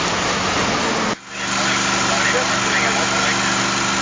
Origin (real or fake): real